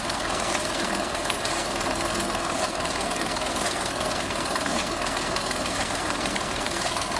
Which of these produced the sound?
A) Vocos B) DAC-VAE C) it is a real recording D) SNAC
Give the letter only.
D